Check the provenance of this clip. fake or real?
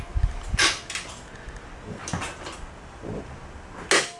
real